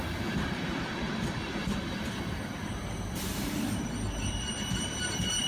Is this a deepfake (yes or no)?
yes